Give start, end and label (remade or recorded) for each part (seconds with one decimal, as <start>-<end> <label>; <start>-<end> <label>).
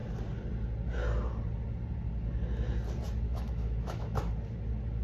0.0-3.3 recorded; 3.3-4.3 remade; 4.3-5.0 recorded